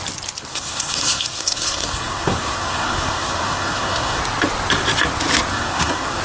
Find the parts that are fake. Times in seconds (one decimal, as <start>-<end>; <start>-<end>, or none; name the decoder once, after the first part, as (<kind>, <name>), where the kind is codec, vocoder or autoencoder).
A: 0.5-4.2 (codec, SNAC); 5.5-6.2